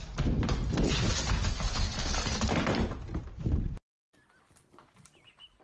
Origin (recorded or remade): recorded